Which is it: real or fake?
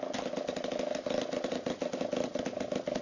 real